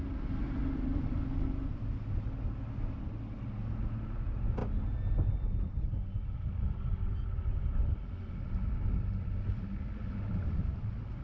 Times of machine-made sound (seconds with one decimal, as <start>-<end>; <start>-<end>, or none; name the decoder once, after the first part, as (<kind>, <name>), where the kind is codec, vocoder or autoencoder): none

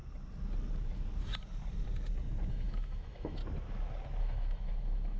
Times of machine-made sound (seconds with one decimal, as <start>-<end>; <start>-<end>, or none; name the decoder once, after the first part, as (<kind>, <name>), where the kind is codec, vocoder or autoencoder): 2.5-3.4 (autoencoder, DAC-VAE); 4.2-5.2

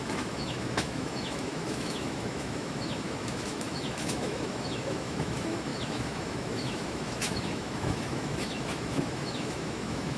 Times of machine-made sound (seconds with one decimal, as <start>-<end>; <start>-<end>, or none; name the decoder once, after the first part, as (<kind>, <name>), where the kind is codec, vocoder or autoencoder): 0.0-10.2 (autoencoder, DAC-VAE)